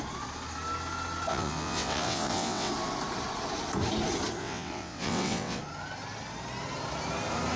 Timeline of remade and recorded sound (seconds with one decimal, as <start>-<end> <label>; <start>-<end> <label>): 0.0-1.3 recorded; 1.3-2.7 remade; 2.7-4.4 recorded; 4.4-5.6 remade; 5.6-7.6 recorded